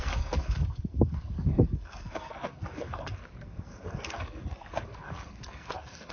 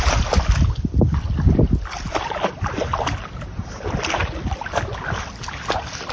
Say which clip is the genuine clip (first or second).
second